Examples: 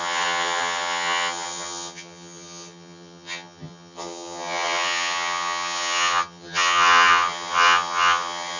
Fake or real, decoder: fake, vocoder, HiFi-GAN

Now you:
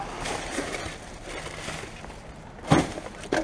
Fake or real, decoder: real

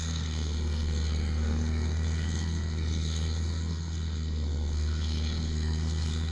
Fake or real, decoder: fake, codec, SNAC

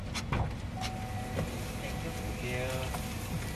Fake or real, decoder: real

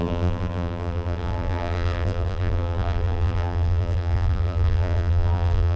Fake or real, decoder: fake, vocoder, BigVGAN v2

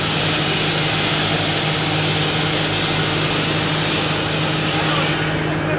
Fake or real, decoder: real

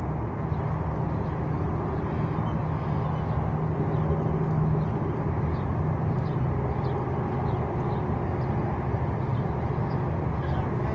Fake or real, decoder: real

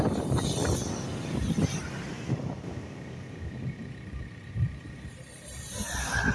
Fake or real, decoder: real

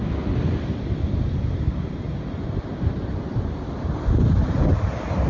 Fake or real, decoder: real